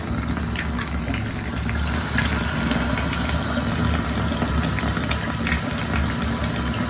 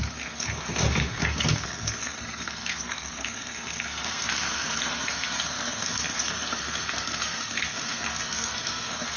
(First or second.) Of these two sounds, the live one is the first